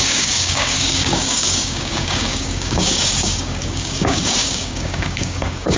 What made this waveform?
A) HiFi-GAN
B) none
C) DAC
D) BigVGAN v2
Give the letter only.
C